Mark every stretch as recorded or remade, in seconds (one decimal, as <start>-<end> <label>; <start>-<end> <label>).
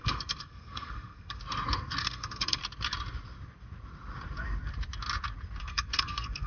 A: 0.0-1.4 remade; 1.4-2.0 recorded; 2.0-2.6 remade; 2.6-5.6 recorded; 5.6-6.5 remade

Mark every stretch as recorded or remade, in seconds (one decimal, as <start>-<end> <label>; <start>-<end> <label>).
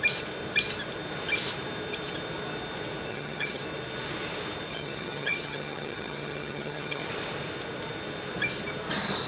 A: 0.0-3.1 recorded; 3.1-3.6 remade; 3.6-4.7 recorded; 4.7-7.1 remade; 7.1-9.3 recorded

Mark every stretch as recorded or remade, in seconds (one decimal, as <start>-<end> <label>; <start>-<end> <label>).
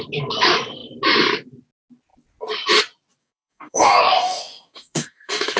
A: 0.0-3.2 recorded; 3.2-5.6 remade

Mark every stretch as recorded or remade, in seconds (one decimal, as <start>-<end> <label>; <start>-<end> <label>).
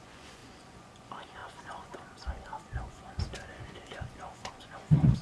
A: 0.0-5.2 remade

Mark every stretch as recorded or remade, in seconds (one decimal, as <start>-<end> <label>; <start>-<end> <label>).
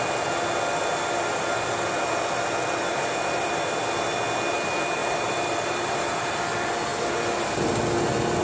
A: 0.0-2.9 recorded; 2.9-3.5 remade; 3.5-5.0 recorded; 5.0-6.2 remade; 6.2-8.4 recorded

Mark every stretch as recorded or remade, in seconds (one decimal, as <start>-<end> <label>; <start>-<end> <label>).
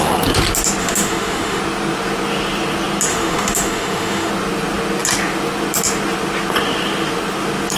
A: 0.0-0.8 recorded; 0.8-1.6 remade; 1.6-3.1 recorded; 3.1-4.3 remade; 4.3-7.8 recorded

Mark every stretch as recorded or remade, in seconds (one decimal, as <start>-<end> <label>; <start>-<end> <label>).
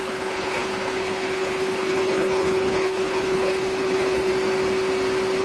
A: 0.0-4.3 remade; 4.3-5.4 recorded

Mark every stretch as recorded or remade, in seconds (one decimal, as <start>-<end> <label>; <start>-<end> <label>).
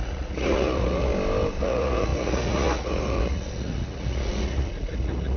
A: 0.0-1.1 remade; 1.1-1.6 recorded; 1.6-5.4 remade